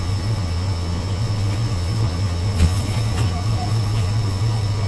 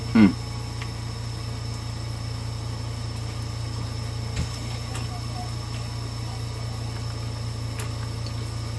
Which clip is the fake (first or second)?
first